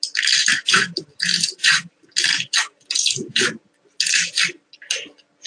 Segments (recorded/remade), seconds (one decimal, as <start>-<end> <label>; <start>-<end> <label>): 0.0-1.5 recorded; 1.5-2.0 remade; 2.0-5.5 recorded